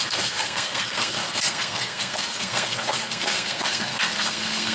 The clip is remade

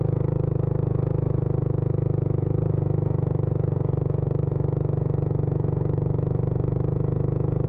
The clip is remade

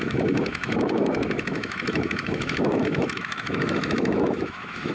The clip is remade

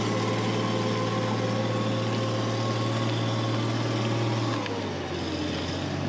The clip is recorded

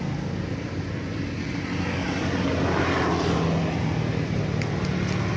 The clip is recorded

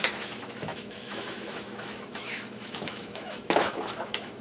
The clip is remade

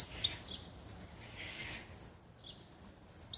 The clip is recorded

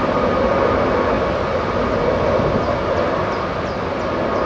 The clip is recorded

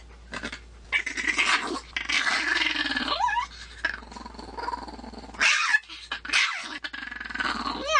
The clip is recorded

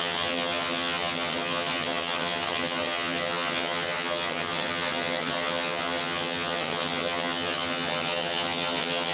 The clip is remade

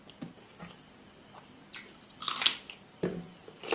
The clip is recorded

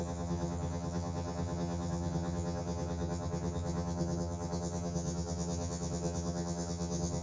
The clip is remade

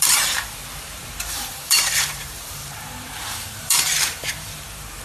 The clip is remade